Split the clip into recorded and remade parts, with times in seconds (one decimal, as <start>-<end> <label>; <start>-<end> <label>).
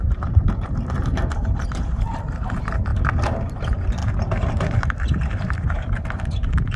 0.0-6.8 remade